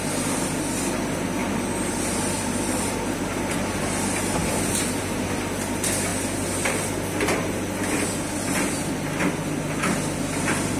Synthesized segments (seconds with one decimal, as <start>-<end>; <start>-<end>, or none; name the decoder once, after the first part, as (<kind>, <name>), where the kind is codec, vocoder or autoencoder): none